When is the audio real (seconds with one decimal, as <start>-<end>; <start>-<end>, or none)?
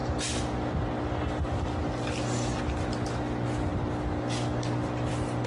0.0-5.5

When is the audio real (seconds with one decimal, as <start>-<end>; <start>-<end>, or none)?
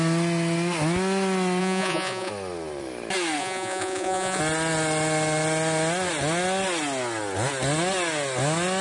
0.0-1.6; 2.3-3.4; 4.4-8.8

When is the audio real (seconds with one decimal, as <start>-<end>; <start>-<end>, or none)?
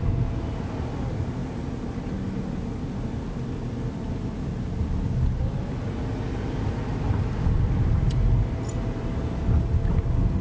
0.0-10.4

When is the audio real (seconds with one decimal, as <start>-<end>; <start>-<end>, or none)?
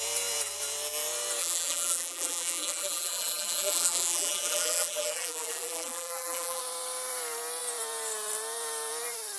0.0-1.4; 6.6-9.4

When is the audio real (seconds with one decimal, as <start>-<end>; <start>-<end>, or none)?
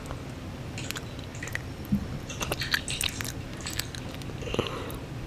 0.0-5.3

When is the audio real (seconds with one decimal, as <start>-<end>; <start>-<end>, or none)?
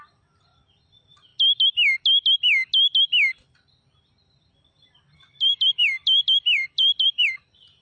1.3-4.5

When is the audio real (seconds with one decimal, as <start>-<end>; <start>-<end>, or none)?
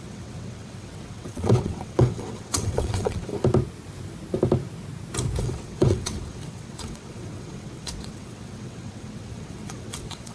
3.3-5.4